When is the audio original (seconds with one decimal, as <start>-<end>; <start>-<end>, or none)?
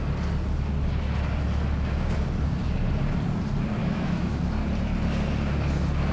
0.0-3.8; 4.4-6.1